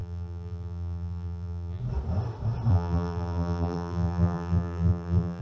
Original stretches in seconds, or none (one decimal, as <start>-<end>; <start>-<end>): 1.8-2.7